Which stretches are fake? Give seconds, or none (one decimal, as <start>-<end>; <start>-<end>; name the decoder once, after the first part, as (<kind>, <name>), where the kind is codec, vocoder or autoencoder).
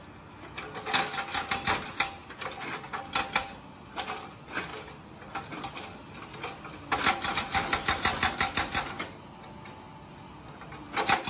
none